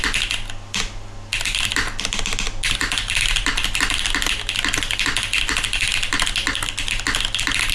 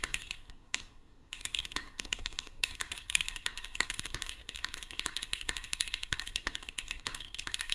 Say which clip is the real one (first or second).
first